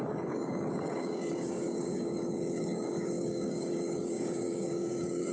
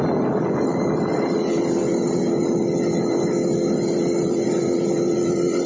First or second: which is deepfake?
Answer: first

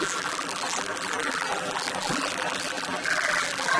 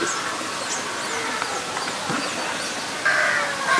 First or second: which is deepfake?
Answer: first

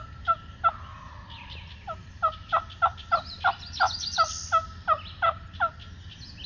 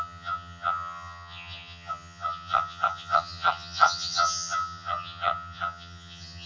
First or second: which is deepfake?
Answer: second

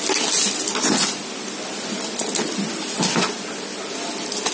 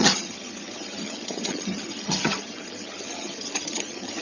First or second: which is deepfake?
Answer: second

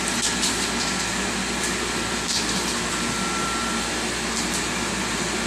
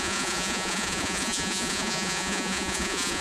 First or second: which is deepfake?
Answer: second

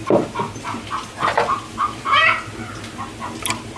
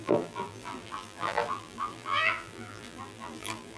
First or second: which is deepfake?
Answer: second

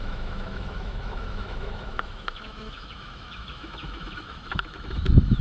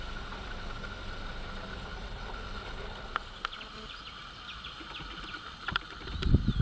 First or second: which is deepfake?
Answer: first